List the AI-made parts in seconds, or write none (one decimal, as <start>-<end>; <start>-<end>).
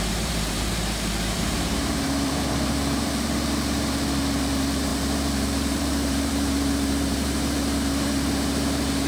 0.0-9.1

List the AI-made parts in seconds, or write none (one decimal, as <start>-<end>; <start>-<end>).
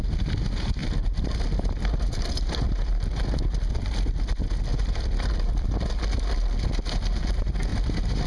0.8-1.5; 4.7-5.9; 7.7-8.3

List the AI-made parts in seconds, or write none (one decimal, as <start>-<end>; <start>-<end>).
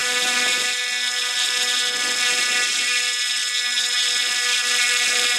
none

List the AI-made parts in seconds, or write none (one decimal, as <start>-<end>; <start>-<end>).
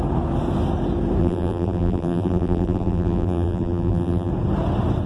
1.2-4.3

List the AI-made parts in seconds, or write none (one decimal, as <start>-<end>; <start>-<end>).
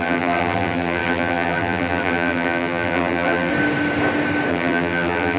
0.0-3.5; 4.5-5.4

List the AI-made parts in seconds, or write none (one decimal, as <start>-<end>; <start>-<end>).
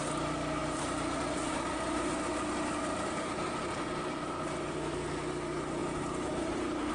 0.6-3.6; 5.8-6.9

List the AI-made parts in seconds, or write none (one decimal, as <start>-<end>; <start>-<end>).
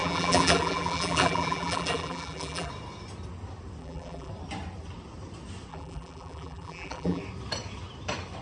0.0-2.7; 3.8-4.3; 5.7-7.2